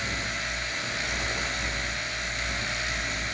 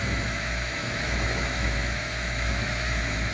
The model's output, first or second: second